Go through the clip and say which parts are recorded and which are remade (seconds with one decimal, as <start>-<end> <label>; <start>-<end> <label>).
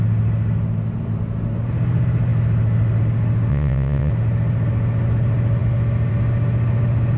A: 0.0-3.5 recorded; 3.5-4.1 remade; 4.1-7.2 recorded